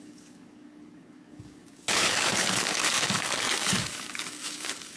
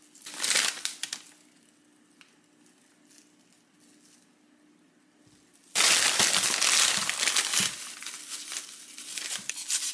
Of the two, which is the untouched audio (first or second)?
second